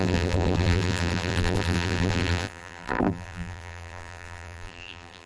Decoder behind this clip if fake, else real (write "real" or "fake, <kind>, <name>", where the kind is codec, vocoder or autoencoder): fake, vocoder, BigVGAN v2